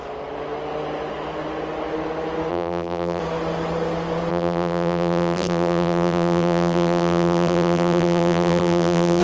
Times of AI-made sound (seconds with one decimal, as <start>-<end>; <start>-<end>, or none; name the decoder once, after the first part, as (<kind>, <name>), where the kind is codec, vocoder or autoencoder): 2.5-3.2 (vocoder, BigVGAN v2); 4.3-9.2